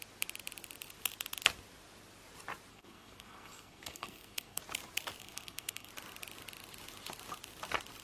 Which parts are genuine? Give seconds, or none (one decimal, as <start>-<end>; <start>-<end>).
0.0-2.7; 4.6-5.2; 5.9-8.0